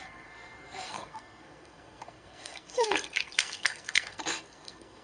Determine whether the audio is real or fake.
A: fake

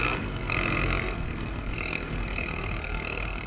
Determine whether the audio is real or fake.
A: fake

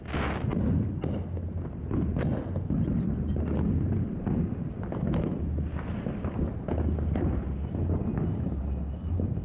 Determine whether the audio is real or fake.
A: real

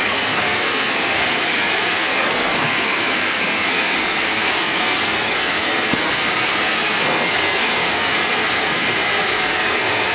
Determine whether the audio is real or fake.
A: fake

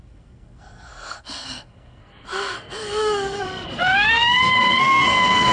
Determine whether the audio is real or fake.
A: fake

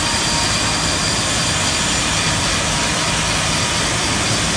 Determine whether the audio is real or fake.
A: real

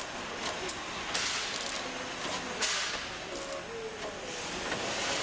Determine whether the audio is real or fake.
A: real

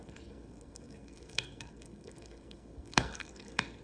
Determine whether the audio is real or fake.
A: fake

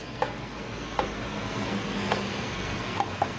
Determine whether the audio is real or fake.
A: fake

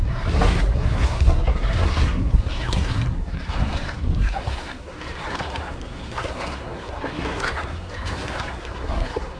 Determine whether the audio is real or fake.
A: fake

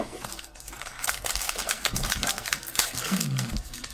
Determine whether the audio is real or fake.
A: fake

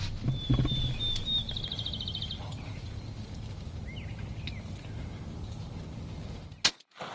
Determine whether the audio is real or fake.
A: real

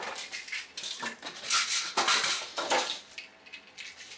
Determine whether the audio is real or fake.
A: real